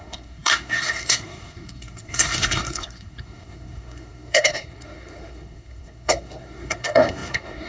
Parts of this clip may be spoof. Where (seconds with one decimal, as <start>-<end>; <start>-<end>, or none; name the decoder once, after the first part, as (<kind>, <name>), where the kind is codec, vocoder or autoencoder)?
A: 0.0-7.7 (codec, SNAC)